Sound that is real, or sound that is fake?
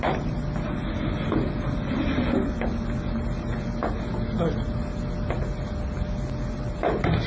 real